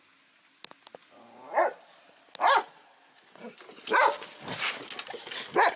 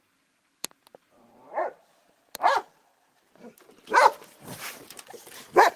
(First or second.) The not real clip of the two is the second